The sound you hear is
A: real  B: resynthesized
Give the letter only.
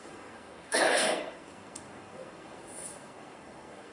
B